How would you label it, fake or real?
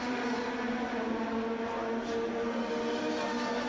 real